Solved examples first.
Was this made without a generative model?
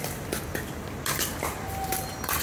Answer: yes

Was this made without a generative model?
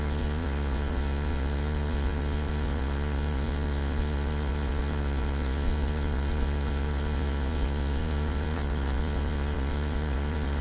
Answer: no